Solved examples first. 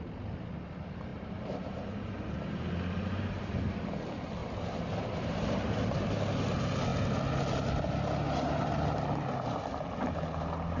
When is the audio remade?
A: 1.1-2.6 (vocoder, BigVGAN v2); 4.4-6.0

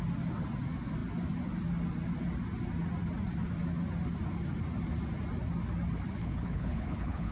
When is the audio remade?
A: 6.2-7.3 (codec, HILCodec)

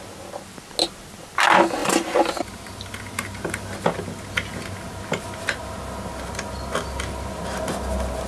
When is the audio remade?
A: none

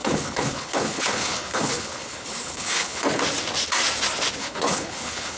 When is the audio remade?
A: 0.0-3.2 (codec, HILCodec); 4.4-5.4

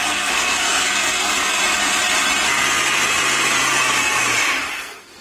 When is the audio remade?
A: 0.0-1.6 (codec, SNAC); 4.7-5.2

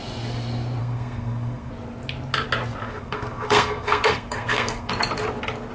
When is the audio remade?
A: 0.8-1.7 (codec, SNAC); 2.8-4.9

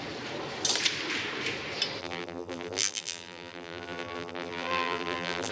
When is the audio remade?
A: 2.0-5.5 (vocoder, BigVGAN v2)